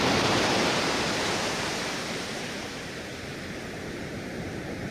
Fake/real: fake